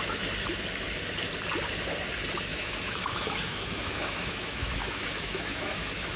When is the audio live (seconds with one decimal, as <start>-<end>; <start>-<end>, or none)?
0.0-2.5